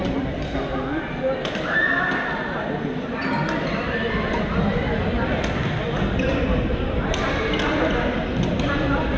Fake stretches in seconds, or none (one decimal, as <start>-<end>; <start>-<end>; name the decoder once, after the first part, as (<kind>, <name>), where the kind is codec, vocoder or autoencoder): none